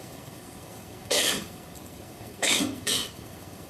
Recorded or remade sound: remade